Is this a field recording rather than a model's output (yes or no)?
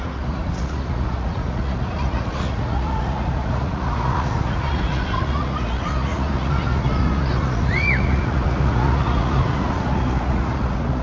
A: no